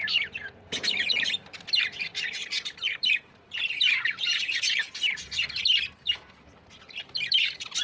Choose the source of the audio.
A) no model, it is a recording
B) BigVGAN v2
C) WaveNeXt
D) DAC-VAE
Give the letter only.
B